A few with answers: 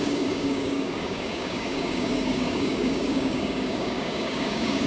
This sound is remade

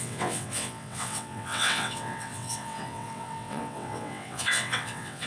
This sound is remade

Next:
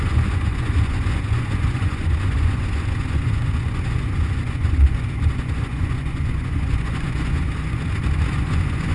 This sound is remade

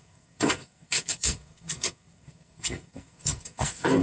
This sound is remade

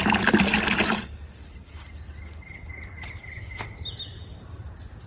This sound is recorded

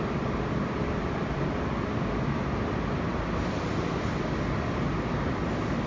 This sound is recorded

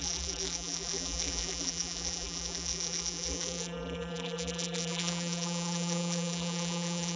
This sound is remade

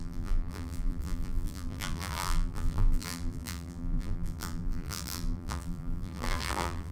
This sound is remade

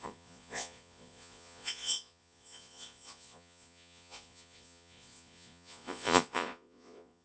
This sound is remade